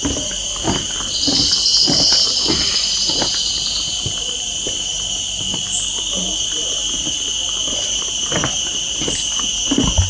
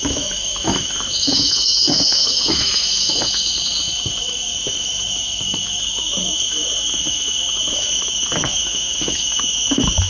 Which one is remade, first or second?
second